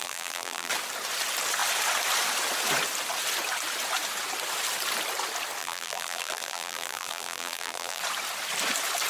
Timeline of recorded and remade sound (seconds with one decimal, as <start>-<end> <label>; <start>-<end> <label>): 0.0-0.7 remade; 0.7-5.6 recorded; 5.6-8.0 remade; 8.0-9.1 recorded